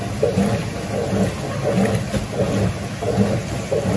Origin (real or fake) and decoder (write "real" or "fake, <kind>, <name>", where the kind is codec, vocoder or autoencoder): real